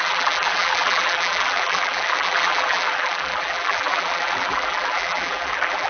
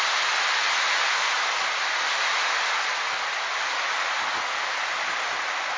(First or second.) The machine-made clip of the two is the first